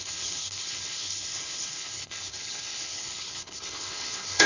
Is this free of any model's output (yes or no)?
no